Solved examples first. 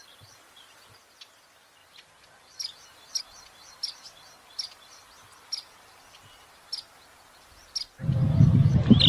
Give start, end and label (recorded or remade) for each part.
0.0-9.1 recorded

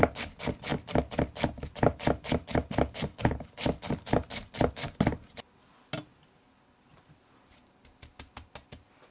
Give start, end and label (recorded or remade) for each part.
0.0-9.1 recorded

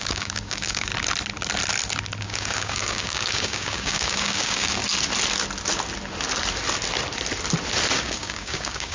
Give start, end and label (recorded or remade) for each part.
0.0-0.9 remade; 0.9-2.2 recorded; 2.2-4.8 remade; 4.8-8.0 recorded; 8.0-8.9 remade